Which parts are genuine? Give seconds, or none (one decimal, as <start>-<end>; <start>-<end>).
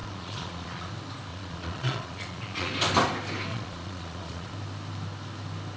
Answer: 0.9-1.3; 2.7-3.5; 4.5-5.8